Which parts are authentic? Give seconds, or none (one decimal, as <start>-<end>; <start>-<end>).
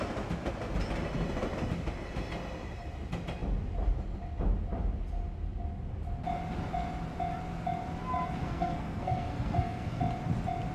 0.0-8.4; 10.0-10.7